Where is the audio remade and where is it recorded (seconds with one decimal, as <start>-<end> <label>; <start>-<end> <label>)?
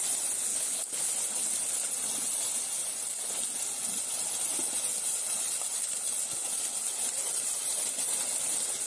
0.0-0.5 recorded; 0.5-1.1 remade; 1.1-8.9 recorded